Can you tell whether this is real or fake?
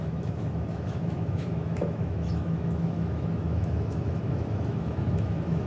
fake